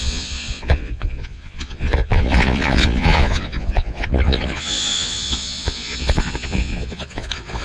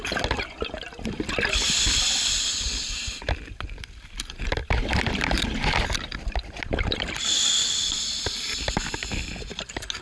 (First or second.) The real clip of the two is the second